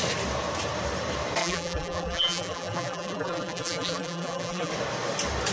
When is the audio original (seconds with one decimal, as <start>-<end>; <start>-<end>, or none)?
0.0-1.4; 4.7-5.5